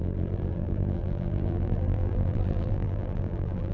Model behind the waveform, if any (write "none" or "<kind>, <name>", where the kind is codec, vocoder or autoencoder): vocoder, BigVGAN v2